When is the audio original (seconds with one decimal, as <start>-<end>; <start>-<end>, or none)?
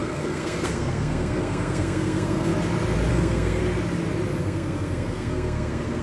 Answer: 2.5-3.1; 3.6-4.4